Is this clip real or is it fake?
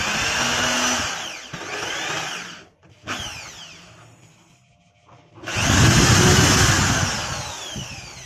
real